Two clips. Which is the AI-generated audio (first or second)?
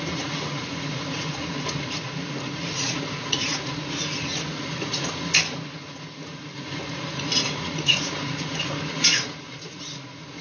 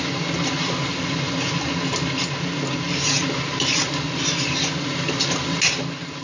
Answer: first